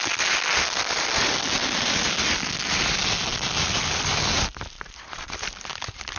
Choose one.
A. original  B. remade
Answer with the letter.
A